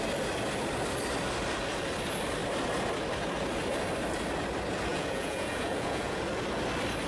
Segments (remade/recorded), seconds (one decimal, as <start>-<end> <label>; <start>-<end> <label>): 0.0-4.9 recorded; 4.9-6.2 remade; 6.2-7.1 recorded